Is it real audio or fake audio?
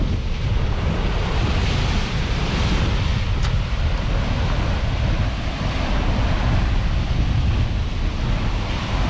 real